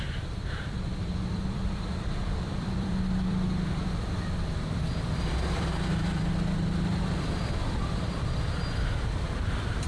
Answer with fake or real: fake